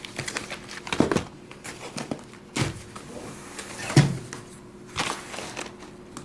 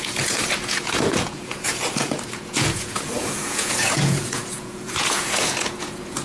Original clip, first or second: first